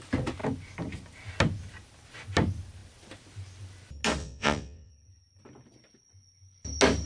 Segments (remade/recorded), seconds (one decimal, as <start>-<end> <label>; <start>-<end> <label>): 0.0-4.2 recorded; 4.2-4.9 remade; 4.9-7.1 recorded